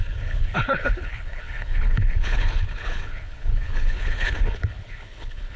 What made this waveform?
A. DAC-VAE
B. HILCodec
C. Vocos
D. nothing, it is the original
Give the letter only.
B